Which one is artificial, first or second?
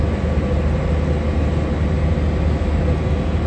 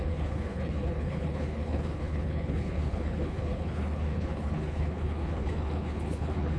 second